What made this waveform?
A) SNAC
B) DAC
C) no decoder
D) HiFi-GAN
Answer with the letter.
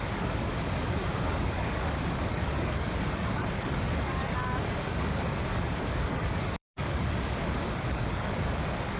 B